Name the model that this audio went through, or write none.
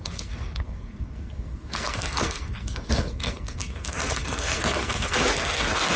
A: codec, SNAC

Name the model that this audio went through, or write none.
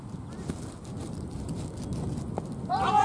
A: none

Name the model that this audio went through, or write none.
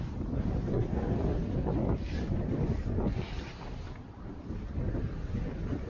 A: none